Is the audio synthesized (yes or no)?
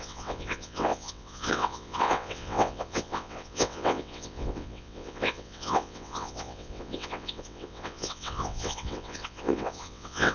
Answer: yes